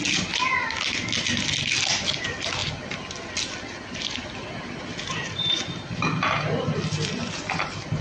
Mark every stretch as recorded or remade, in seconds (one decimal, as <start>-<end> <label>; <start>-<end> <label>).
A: 0.0-8.0 recorded